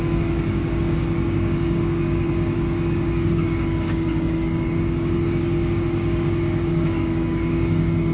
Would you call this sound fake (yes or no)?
yes